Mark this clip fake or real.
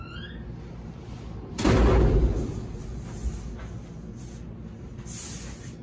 real